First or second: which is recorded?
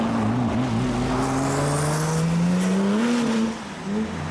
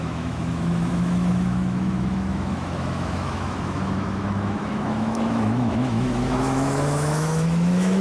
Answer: first